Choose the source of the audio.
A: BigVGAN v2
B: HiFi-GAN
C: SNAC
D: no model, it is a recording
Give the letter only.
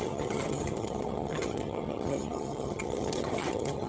B